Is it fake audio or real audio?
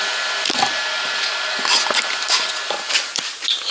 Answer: real